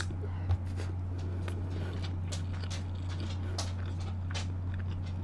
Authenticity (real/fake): real